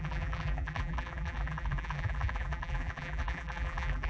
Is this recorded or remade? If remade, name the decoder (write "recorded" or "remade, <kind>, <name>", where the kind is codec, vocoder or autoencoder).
remade, vocoder, BigVGAN v2